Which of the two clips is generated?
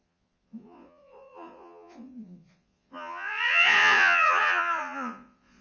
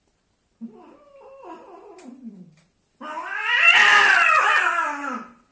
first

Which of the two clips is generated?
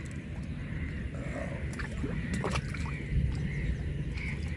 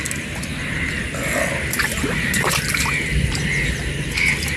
first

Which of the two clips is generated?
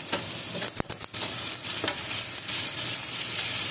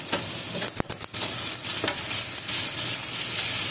first